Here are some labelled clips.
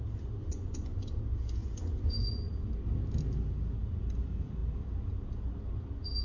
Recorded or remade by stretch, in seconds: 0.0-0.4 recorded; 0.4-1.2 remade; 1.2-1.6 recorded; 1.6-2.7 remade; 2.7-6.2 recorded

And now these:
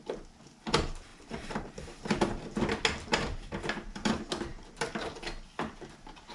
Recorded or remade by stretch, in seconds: 0.0-1.1 recorded; 1.1-2.6 remade; 2.6-3.1 recorded; 3.1-4.1 remade; 4.1-4.5 recorded; 4.5-5.2 remade; 5.2-6.3 recorded

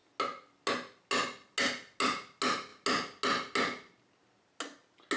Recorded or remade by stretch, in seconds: 0.0-5.2 recorded

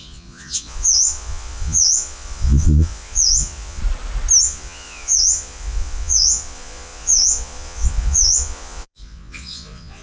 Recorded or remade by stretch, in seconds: 0.0-3.8 remade; 3.8-4.4 recorded; 4.4-10.0 remade

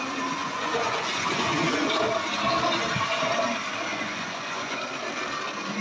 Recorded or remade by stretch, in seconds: 0.0-0.4 recorded; 0.4-1.9 remade; 1.9-3.9 recorded; 3.9-4.8 remade; 4.8-5.8 recorded

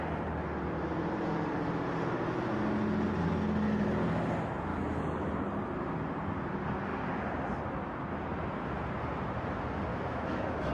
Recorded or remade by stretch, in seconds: 0.0-4.7 recorded; 4.7-5.3 remade; 5.3-9.9 recorded; 9.9-10.7 remade

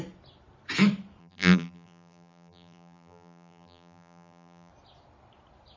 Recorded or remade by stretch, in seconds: 0.0-1.2 recorded; 1.2-4.7 remade; 4.7-5.8 recorded

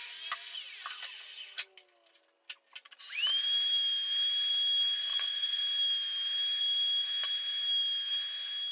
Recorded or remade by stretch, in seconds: 0.0-5.1 recorded; 5.1-5.6 remade; 5.6-8.7 recorded